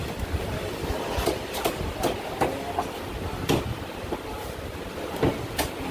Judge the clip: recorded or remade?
recorded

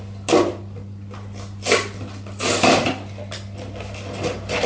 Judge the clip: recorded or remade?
recorded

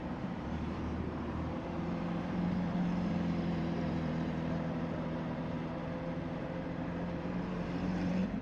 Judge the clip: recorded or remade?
remade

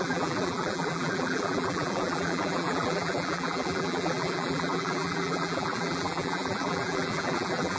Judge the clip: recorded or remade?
remade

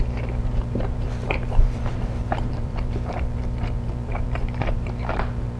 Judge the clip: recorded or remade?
remade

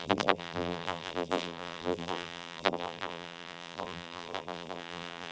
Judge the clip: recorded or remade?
remade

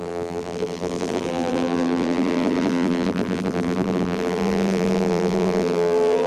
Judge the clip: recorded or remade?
remade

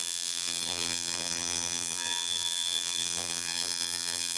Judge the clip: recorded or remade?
remade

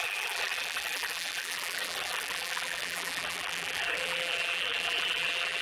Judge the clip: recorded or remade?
remade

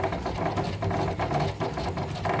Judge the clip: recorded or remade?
recorded